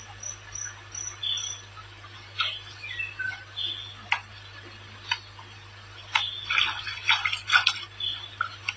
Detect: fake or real real